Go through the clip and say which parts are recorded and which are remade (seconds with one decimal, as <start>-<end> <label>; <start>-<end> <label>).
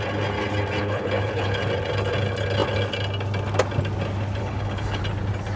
0.0-0.8 recorded; 0.8-1.6 remade; 1.6-4.4 recorded; 4.4-5.0 remade; 5.0-5.6 recorded